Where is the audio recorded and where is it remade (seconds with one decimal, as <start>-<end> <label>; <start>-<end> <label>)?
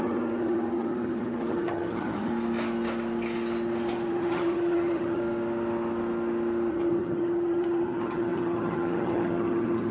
0.0-2.3 remade; 2.3-4.1 recorded; 4.1-5.2 remade; 5.2-6.7 recorded; 6.7-9.9 remade